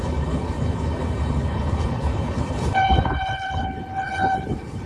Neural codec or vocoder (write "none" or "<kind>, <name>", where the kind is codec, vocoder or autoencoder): codec, HILCodec